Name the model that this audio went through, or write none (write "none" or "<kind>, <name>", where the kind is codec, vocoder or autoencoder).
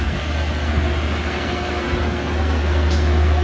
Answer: codec, SNAC